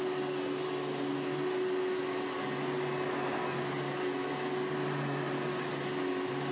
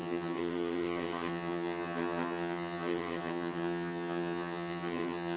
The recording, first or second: first